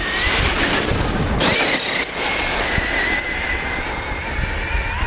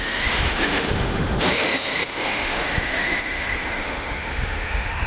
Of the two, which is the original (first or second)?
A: first